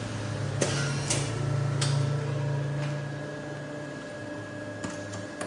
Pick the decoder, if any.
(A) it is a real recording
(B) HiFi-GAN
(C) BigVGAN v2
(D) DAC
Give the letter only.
A